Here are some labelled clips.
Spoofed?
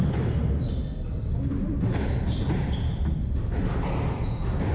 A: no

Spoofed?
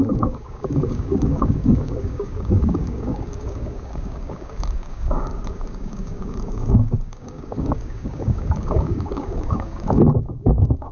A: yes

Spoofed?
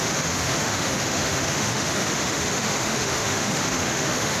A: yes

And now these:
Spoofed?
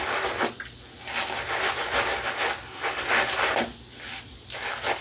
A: no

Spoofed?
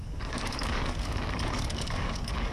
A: yes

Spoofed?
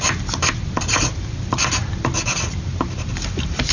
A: yes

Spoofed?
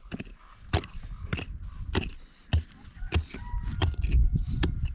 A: no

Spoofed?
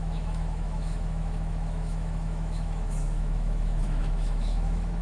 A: yes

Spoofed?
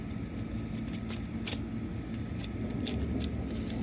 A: no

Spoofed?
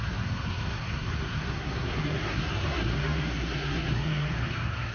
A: yes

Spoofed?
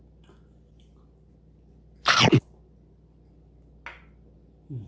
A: no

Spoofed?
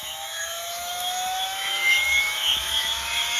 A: yes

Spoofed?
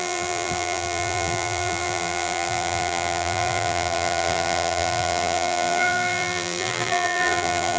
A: yes